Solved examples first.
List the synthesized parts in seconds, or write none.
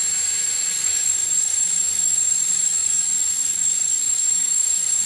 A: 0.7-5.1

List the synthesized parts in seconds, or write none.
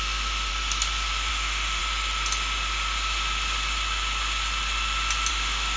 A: 0.0-0.5; 1.3-1.8; 5.3-5.8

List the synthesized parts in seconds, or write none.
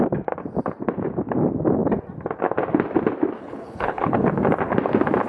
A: 3.4-4.3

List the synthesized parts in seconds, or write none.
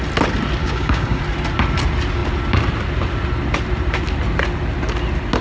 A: 0.6-1.2